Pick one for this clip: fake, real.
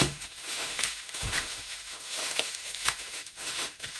fake